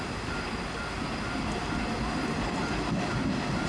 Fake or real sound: real